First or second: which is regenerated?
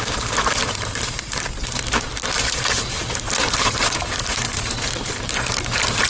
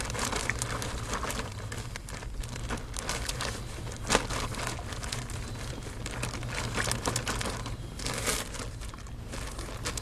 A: first